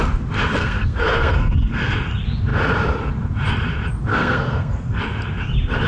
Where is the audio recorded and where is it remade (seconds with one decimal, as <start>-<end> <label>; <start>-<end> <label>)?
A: 0.0-0.6 recorded; 0.6-1.9 remade; 1.9-4.1 recorded; 4.1-5.0 remade; 5.0-5.9 recorded